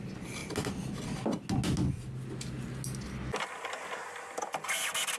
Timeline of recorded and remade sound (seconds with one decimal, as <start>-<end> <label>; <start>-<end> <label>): 0.0-5.2 recorded